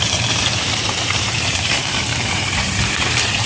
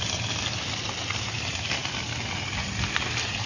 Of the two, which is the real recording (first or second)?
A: second